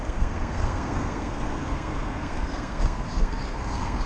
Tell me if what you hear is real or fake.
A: fake